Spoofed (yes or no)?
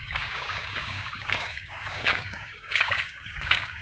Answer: yes